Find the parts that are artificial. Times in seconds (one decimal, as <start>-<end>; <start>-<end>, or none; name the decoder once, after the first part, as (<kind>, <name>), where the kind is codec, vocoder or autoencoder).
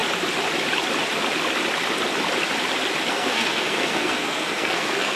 3.1-5.2 (codec, SNAC)